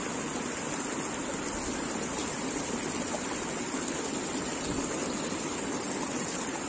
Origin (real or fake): real